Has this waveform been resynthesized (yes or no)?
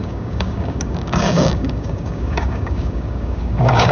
yes